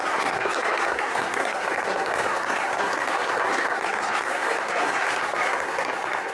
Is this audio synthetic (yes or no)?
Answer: yes